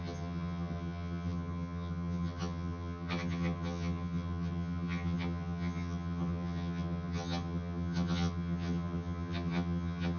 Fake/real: fake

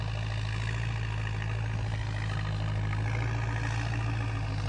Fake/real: real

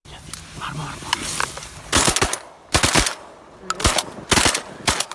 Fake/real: real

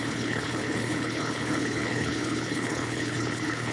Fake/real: fake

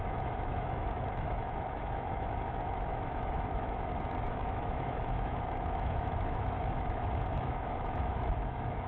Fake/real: fake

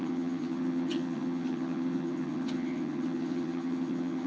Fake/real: fake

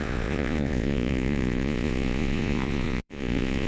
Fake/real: fake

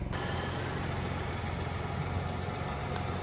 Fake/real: real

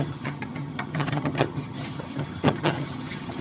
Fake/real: fake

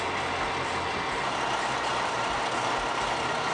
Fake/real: real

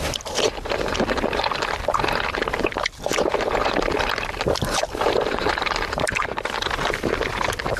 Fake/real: real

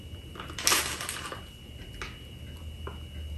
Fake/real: real